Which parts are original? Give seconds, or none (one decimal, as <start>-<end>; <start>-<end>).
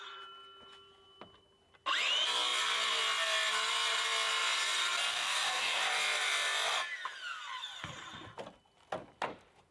0.0-5.1; 5.8-9.7